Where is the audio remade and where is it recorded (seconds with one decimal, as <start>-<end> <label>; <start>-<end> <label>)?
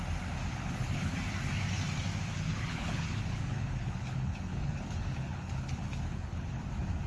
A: 0.0-0.5 recorded; 0.5-1.2 remade; 1.2-2.3 recorded; 2.3-6.6 remade; 6.6-7.1 recorded